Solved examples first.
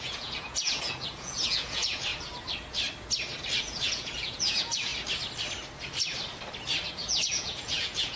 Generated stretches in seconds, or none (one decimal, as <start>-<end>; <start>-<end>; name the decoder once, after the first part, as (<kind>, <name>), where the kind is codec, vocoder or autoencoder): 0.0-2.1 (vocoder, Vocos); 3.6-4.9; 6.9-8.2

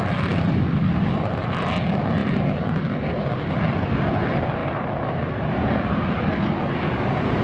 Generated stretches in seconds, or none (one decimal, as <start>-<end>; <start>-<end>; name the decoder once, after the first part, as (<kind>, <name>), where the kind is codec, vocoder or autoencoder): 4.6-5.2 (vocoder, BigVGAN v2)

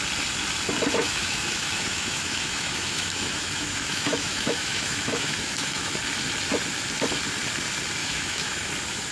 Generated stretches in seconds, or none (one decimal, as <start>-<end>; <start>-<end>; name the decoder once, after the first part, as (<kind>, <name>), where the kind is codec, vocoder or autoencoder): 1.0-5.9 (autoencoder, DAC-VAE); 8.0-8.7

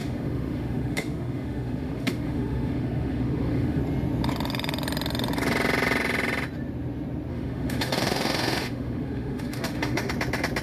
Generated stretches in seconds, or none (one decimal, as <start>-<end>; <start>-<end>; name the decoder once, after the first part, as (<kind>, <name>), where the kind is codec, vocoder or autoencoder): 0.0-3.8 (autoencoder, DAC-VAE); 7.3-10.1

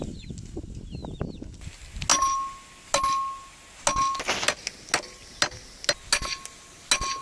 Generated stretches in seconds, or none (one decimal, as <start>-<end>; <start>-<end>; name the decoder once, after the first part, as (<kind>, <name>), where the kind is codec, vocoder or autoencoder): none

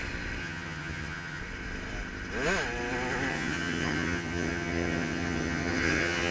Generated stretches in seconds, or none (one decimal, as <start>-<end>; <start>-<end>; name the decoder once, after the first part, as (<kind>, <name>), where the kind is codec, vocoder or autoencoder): 0.4-1.4 (vocoder, HiFi-GAN); 3.3-6.3